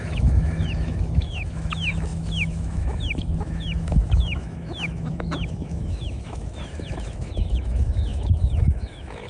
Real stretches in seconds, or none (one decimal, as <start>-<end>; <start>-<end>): none